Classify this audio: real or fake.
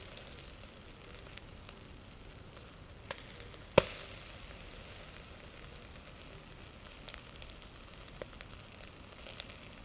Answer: real